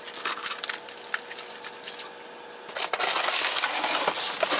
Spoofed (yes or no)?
no